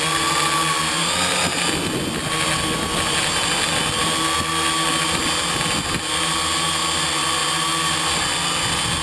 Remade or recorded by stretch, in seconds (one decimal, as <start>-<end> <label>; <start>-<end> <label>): 0.0-9.0 recorded